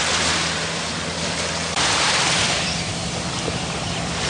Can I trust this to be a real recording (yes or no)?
no